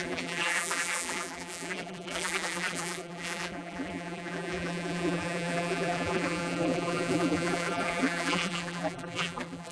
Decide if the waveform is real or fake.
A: fake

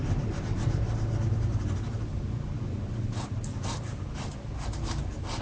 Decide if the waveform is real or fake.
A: real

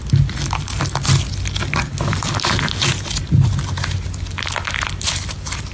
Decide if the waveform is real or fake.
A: real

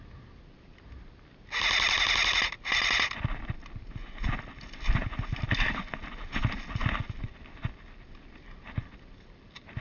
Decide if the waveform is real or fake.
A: real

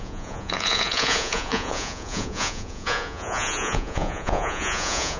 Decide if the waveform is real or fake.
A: fake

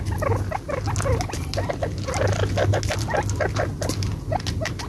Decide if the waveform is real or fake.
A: real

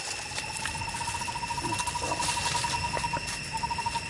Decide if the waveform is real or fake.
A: real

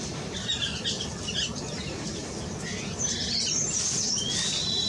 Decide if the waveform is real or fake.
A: real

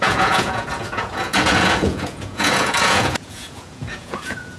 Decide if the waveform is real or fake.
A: fake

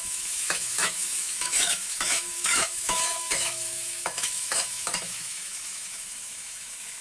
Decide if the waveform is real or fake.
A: fake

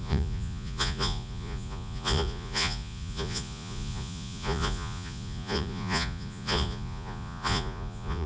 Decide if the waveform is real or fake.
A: fake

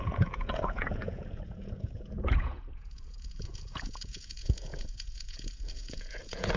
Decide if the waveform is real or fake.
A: fake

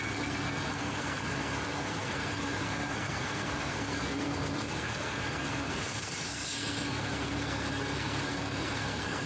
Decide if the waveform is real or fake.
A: fake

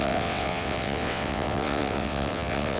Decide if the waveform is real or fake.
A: fake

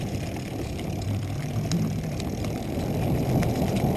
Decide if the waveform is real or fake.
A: fake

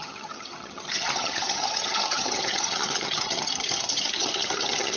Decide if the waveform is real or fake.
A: fake